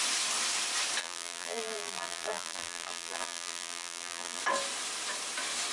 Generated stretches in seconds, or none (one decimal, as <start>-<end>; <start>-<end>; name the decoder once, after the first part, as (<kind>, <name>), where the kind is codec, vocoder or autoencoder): 1.0-4.4 (vocoder, BigVGAN v2)